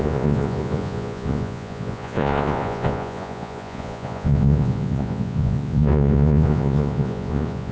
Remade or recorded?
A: remade